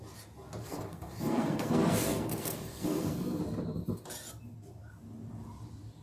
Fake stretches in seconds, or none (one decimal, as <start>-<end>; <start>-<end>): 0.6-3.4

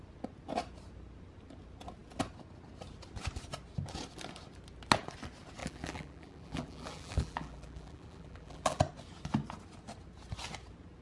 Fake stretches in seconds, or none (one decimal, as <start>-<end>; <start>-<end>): 5.6-8.8

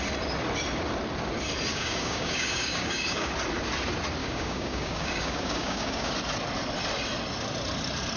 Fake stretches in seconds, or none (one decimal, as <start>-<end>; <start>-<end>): 1.7-3.3; 4.2-6.1

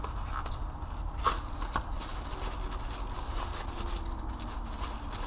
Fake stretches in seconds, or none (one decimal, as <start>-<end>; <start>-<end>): none